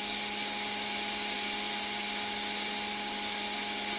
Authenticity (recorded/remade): recorded